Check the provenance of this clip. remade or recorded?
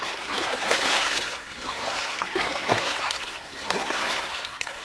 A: remade